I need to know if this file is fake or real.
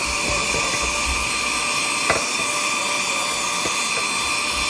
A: real